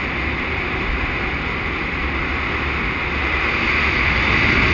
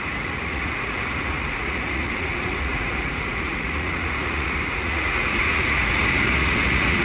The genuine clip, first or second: first